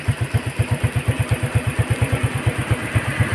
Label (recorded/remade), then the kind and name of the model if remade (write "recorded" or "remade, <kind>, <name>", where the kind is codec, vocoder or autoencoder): recorded